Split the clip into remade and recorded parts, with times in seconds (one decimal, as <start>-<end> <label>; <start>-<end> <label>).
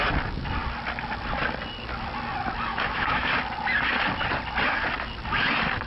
0.0-2.7 recorded; 2.7-3.3 remade; 3.3-5.9 recorded